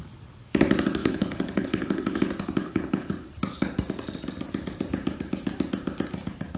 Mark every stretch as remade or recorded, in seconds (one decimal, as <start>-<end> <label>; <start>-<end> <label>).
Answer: 0.0-1.0 recorded; 1.0-2.2 remade; 2.2-2.6 recorded; 2.6-3.1 remade; 3.1-6.6 recorded